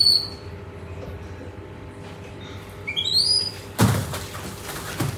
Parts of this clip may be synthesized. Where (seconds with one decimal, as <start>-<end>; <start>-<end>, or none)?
none

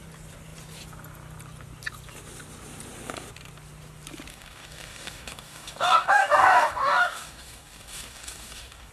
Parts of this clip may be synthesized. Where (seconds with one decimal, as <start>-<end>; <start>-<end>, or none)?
4.3-8.9

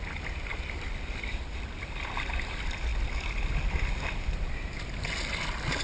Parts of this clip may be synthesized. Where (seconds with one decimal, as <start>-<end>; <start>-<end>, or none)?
none

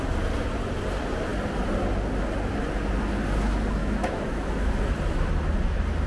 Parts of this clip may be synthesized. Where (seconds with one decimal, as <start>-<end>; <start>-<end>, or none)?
3.8-4.7

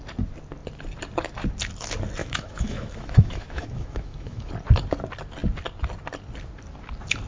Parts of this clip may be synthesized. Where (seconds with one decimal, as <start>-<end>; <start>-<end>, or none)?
2.2-4.5

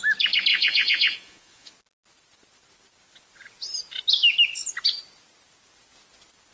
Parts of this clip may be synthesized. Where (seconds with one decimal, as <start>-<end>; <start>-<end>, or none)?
0.5-1.7